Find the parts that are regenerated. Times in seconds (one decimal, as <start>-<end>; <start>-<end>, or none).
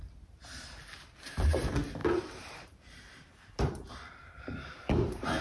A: 2.0-5.4